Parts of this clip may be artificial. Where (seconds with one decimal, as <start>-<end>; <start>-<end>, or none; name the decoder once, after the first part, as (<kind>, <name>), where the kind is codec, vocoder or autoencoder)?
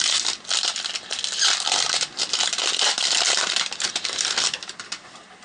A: none